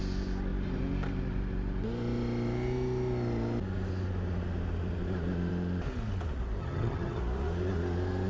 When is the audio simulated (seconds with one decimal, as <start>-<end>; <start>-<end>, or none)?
6.6-7.2